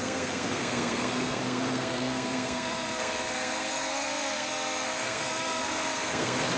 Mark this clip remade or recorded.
remade